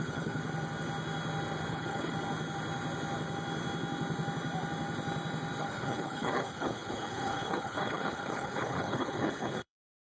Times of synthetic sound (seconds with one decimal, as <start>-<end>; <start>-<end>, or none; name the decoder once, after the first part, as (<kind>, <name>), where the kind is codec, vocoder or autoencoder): 0.0-0.4 (codec, HILCodec); 1.7-2.1; 5.6-10.2